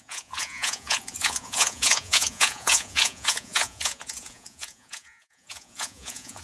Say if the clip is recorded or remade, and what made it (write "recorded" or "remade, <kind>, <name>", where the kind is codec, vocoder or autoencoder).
remade, vocoder, Vocos